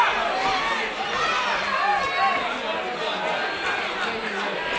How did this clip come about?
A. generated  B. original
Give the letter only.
B